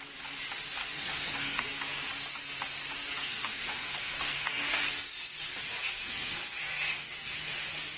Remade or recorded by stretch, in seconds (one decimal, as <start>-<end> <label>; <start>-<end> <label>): 0.0-0.8 recorded; 0.8-1.8 remade; 1.8-3.2 recorded; 3.2-4.8 remade; 4.8-5.8 recorded; 5.8-7.5 remade; 7.5-8.0 recorded